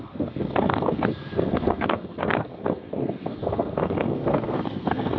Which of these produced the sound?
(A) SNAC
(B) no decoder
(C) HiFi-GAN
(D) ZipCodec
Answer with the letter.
A